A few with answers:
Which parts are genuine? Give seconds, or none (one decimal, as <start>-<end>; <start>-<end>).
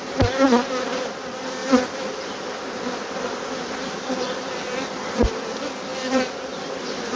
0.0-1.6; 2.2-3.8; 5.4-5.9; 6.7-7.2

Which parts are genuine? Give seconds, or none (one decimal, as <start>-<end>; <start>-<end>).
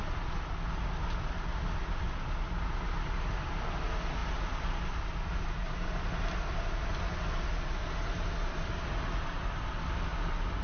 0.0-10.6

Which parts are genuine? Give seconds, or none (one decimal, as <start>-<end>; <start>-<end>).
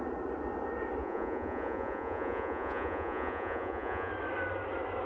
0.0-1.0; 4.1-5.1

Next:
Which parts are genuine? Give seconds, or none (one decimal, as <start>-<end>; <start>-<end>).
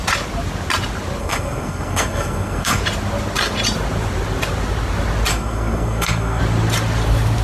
0.0-1.2; 2.8-5.3; 6.4-7.4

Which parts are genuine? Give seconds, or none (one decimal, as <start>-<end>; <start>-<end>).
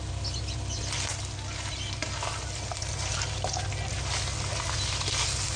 0.0-5.6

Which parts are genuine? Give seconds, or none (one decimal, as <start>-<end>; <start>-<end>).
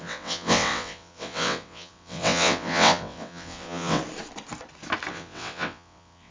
4.0-5.1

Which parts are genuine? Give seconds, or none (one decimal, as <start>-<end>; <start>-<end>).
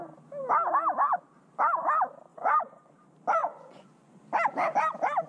0.0-2.3; 2.9-3.4; 4.2-5.3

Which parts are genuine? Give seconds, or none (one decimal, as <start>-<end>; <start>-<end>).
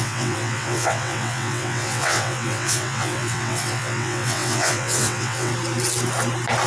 5.5-6.7